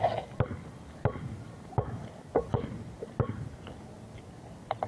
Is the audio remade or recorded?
recorded